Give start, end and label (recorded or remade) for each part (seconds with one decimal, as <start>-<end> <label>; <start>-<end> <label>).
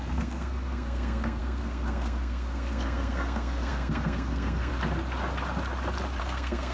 0.0-4.7 remade; 4.7-6.2 recorded; 6.2-6.7 remade